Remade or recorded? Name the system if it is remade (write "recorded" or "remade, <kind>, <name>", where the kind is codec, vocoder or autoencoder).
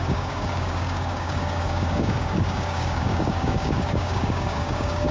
remade, codec, DAC